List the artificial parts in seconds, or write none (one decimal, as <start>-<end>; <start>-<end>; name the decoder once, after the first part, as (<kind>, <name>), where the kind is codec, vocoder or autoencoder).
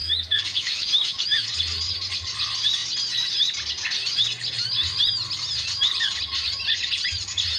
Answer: 0.0-1.5 (autoencoder, DAC-VAE)